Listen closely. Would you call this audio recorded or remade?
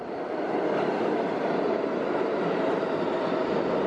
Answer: recorded